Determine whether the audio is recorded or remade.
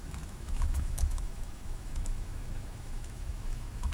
remade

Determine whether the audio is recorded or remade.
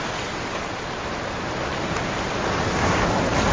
recorded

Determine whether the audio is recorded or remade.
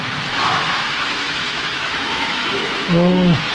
remade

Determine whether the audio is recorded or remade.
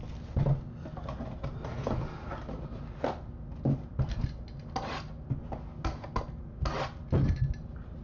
recorded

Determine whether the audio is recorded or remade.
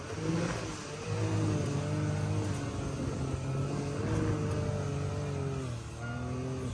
recorded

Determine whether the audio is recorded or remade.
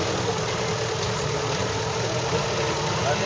recorded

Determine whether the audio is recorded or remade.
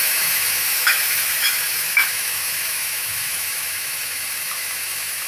remade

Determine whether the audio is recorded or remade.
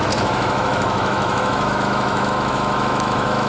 remade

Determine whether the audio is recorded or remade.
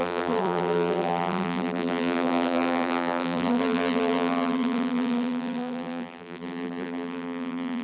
remade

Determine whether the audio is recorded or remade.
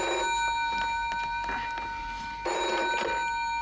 recorded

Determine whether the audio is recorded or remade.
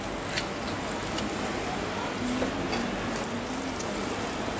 recorded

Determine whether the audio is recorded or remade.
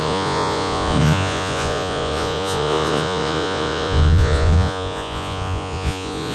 remade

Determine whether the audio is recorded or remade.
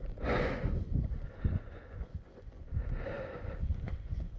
remade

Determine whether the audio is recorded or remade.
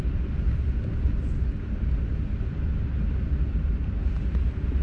recorded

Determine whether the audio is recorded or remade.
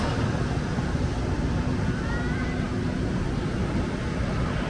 recorded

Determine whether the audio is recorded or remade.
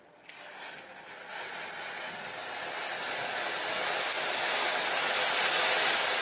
recorded